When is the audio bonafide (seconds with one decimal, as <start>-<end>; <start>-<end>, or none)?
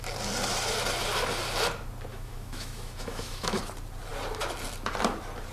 0.0-2.1; 3.6-5.5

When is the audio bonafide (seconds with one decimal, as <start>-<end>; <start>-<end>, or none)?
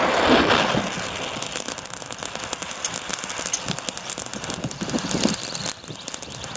0.0-6.6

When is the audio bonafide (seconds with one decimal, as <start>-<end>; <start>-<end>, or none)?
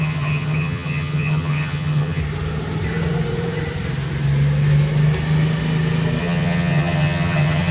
2.2-6.2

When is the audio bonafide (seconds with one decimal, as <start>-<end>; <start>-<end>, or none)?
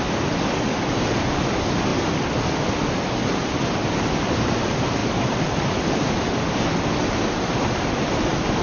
0.0-1.9; 3.2-5.0; 6.1-8.6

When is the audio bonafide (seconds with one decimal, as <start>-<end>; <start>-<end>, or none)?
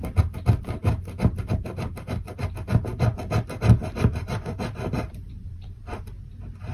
0.0-3.8; 6.1-6.7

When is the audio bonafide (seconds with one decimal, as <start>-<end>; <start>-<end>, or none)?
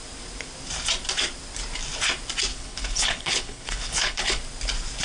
0.0-2.5; 4.4-5.0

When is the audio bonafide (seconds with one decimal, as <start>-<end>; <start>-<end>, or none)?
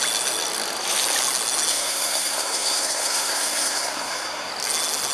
0.0-1.7; 4.5-5.1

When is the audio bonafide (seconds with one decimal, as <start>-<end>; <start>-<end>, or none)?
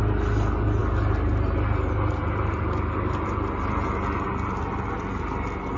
0.0-5.8